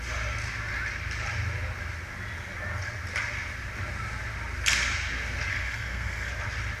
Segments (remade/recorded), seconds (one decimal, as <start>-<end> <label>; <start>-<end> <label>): 0.0-5.5 recorded; 5.5-6.3 remade; 6.3-6.8 recorded